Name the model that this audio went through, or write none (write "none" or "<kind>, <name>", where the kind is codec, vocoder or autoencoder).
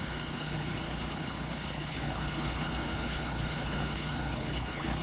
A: codec, HILCodec